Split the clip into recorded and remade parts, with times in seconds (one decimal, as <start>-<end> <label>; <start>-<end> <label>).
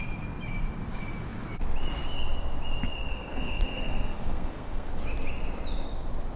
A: 0.0-3.1 recorded; 3.1-4.9 remade; 4.9-6.4 recorded